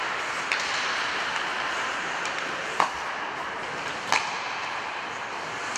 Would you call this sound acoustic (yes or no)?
no